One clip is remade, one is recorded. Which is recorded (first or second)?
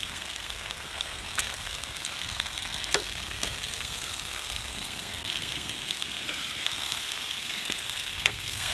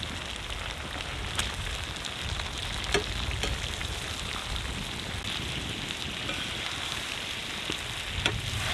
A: second